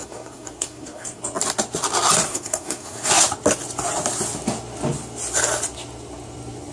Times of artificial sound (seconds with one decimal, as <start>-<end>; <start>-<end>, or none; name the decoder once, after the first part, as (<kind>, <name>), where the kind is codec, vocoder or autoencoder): 0.0-1.2 (codec, SNAC); 2.3-3.1